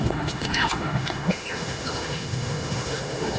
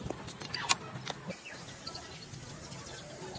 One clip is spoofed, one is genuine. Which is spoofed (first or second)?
first